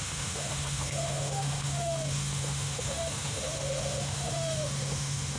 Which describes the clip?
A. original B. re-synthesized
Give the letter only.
B